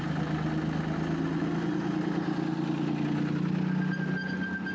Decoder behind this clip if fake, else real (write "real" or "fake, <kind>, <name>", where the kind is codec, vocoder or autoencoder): real